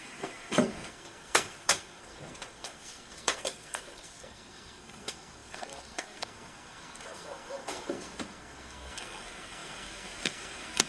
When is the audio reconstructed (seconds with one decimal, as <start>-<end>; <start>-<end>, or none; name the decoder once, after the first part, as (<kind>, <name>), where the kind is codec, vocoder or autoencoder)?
0.0-10.9 (codec, SNAC)